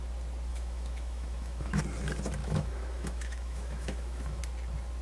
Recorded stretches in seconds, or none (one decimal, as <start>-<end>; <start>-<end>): 0.0-0.5; 1.8-2.4; 4.4-5.0